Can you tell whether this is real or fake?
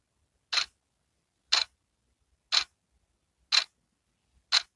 real